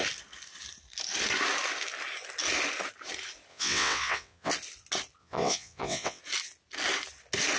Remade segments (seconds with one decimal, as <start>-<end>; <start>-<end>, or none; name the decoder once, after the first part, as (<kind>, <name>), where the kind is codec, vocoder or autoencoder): 3.5-4.5 (vocoder, WaveNeXt); 5.2-6.2